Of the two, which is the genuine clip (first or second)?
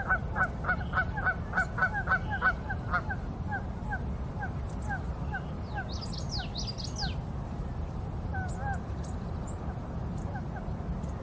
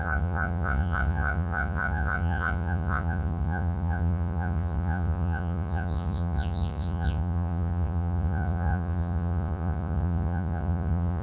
first